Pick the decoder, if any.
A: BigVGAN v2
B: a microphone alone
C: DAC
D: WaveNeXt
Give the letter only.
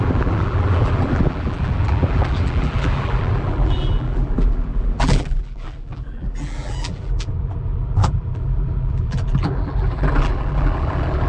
A